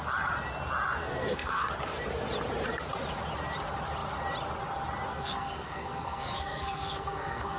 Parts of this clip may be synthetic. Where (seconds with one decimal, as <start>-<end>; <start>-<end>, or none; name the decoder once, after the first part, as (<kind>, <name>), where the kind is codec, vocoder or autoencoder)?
1.0-1.7 (codec, SNAC); 5.1-7.6